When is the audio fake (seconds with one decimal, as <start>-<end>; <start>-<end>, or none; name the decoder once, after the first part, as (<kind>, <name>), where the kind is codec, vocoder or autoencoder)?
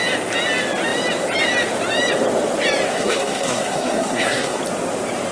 2.9-4.6 (codec, SNAC)